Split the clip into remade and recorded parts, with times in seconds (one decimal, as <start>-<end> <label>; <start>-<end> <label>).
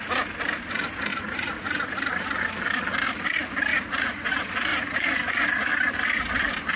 0.0-1.1 recorded; 1.1-1.9 remade; 1.9-3.7 recorded; 3.7-4.3 remade; 4.3-4.7 recorded; 4.7-5.7 remade; 5.7-6.8 recorded